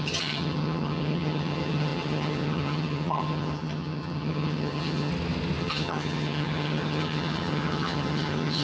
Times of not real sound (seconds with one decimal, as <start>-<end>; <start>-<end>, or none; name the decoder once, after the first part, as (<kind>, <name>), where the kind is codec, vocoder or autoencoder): 0.0-5.1 (vocoder, HiFi-GAN); 5.6-8.6